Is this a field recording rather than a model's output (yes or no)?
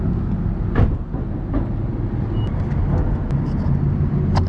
yes